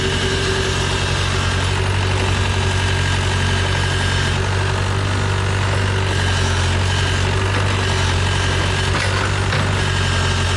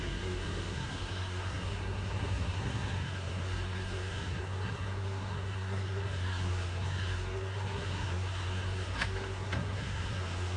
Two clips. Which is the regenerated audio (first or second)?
second